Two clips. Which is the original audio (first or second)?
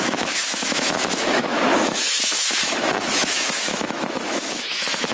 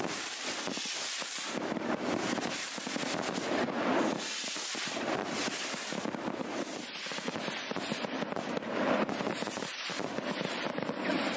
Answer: second